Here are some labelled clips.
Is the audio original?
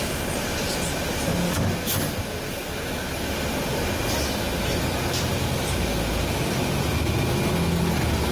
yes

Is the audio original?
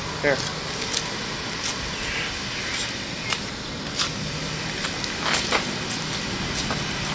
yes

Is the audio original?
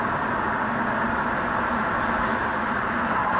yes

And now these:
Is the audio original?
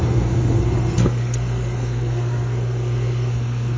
no